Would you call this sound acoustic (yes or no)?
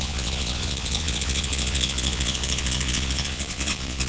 no